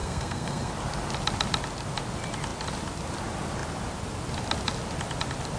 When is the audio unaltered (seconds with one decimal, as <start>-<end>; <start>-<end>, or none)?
0.7-5.6